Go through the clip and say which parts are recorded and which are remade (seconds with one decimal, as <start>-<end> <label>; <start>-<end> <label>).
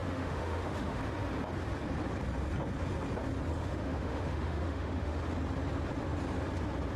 0.0-1.0 remade; 1.0-3.6 recorded; 3.6-5.2 remade; 5.2-7.0 recorded